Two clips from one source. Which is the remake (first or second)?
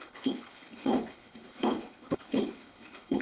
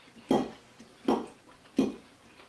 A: first